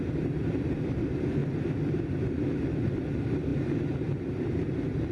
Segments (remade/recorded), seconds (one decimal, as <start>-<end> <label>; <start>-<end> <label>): 0.0-5.1 remade